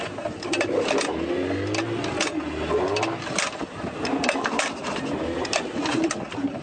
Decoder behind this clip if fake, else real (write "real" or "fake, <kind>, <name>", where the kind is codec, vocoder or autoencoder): real